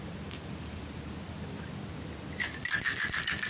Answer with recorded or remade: recorded